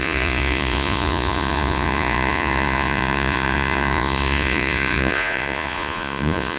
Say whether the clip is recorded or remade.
remade